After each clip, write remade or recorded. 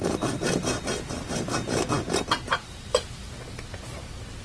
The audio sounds recorded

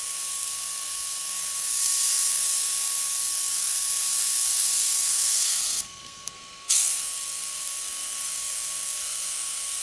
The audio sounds remade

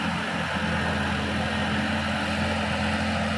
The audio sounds recorded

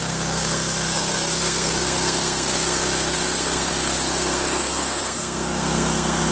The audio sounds remade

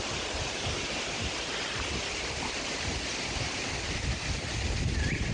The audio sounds recorded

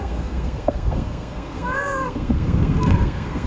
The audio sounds remade